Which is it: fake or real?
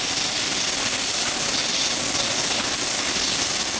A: real